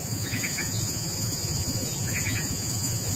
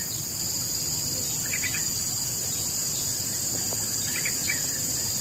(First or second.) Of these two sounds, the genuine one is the second